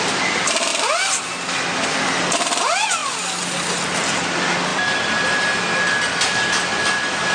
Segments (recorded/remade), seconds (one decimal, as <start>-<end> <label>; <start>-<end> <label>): 0.0-7.3 recorded